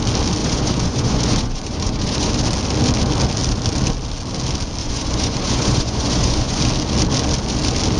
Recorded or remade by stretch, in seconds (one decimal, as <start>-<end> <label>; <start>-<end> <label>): 0.0-0.4 recorded; 0.4-2.3 remade; 2.3-4.8 recorded; 4.8-6.6 remade; 6.6-8.0 recorded